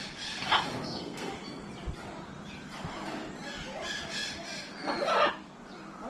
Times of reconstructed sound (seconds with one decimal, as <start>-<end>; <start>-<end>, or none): 0.7-1.3